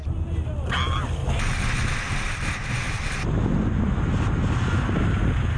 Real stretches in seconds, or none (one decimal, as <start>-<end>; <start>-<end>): 0.0-5.6